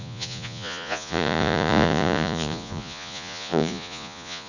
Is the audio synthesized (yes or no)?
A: yes